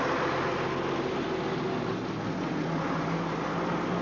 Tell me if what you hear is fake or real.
real